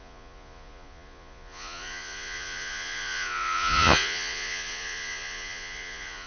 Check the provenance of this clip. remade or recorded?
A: remade